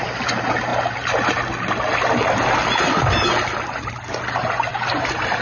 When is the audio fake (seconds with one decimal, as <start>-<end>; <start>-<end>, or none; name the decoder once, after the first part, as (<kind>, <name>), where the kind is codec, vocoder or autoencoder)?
4.7-5.4 (vocoder, BigVGAN v2)